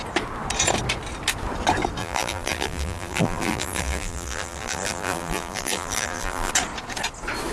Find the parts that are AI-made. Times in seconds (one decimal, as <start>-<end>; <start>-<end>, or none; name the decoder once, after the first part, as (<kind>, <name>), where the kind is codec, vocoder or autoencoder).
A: 2.0-6.5 (vocoder, BigVGAN v2)